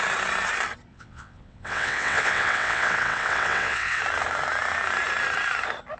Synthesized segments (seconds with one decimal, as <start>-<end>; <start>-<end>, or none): 0.9-4.0